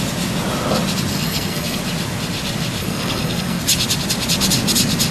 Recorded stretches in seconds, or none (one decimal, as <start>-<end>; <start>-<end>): 0.0-1.1; 1.8-2.8; 3.6-5.1